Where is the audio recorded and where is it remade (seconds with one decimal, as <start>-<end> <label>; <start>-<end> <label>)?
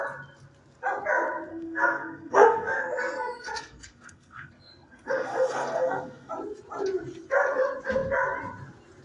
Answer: 0.0-1.5 recorded; 1.5-6.3 remade; 6.3-9.0 recorded